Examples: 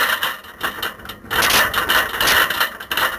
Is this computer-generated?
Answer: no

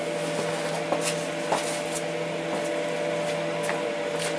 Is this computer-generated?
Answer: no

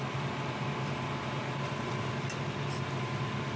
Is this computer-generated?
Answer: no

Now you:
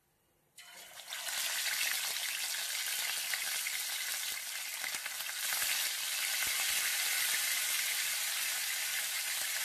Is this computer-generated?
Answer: no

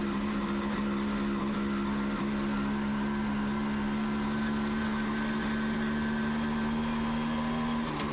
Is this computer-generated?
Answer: no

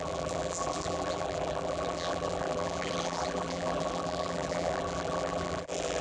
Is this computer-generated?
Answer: yes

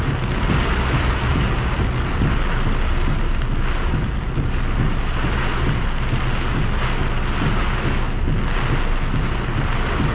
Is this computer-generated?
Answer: no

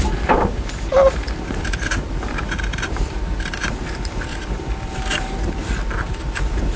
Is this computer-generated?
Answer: yes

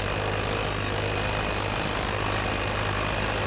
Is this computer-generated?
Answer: no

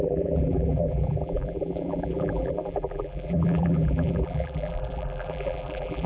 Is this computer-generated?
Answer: yes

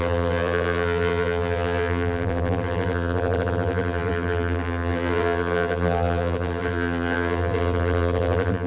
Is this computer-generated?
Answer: yes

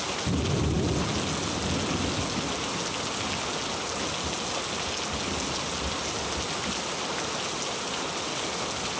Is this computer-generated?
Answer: no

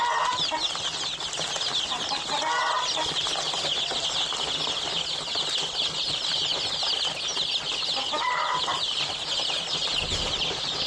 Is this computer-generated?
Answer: no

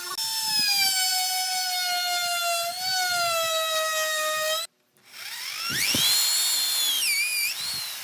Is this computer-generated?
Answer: no